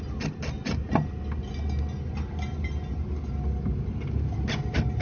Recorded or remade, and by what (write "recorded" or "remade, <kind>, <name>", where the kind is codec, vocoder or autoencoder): recorded